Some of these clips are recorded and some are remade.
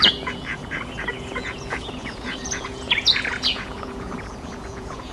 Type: remade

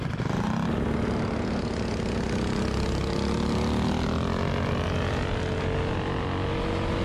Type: recorded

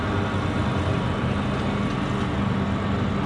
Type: recorded